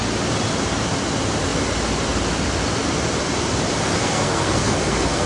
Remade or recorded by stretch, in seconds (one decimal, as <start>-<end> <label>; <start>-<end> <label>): 0.0-4.0 recorded; 4.0-5.3 remade